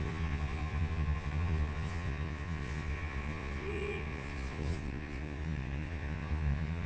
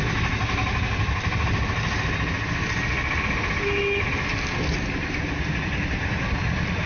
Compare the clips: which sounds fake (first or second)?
first